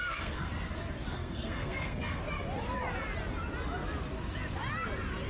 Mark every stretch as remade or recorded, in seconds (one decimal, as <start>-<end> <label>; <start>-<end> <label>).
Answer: 0.0-0.5 remade; 0.5-1.1 recorded; 1.1-2.2 remade; 2.2-5.3 recorded